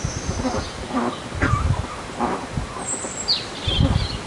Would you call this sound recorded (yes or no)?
yes